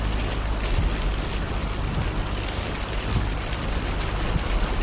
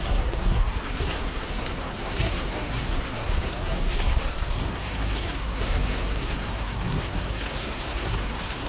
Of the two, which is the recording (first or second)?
first